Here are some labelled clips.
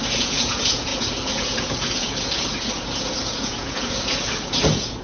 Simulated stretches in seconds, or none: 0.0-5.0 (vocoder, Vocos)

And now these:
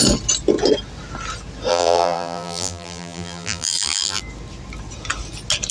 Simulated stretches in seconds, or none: 1.7-4.2 (vocoder, BigVGAN v2)

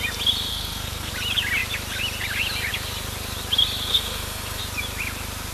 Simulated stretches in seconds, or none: 0.5-1.1 (codec, SNAC); 3.9-4.6

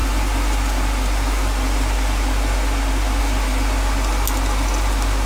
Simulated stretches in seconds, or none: none

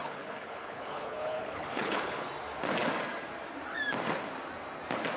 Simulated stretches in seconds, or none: 0.0-2.3 (codec, HILCodec)

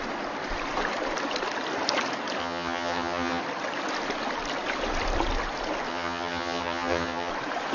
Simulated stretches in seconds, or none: 2.4-3.4 (vocoder, HiFi-GAN); 5.9-7.3

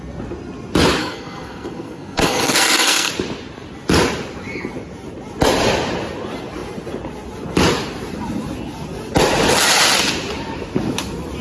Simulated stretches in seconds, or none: 1.0-3.1 (codec, SNAC)